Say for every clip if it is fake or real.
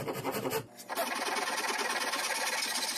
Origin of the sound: real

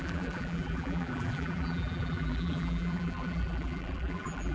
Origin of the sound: fake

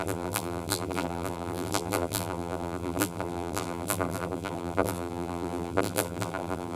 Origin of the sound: fake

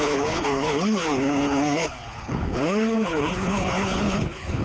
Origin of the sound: fake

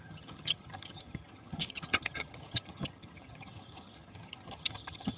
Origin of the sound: fake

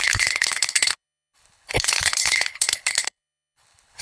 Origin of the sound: fake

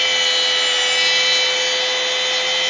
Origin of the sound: real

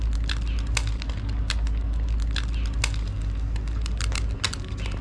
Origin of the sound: real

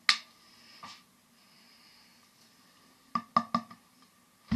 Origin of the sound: real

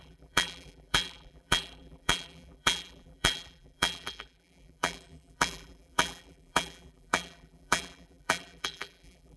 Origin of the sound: fake